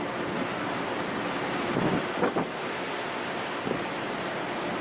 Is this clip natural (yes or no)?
yes